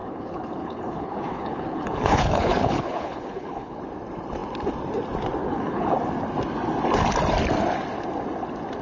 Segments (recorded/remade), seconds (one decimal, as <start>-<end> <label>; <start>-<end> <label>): 0.0-3.8 remade; 3.8-5.4 recorded; 5.4-5.9 remade; 5.9-8.8 recorded